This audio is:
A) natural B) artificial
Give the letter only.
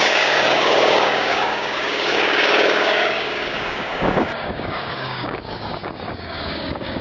B